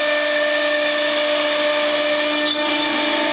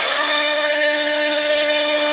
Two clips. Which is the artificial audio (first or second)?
second